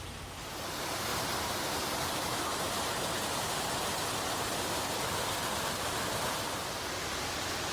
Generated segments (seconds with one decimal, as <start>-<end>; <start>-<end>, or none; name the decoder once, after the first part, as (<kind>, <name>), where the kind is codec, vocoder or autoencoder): none